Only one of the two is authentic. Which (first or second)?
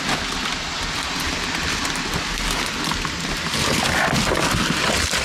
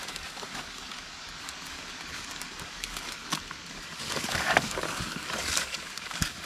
first